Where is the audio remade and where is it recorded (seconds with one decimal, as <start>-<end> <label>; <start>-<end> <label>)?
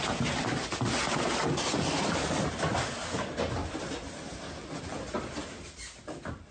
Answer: 0.0-6.5 recorded